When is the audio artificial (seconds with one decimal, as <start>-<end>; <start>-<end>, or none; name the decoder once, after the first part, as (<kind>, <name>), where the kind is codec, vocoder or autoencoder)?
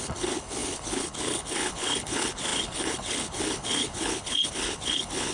0.0-5.3 (codec, HILCodec)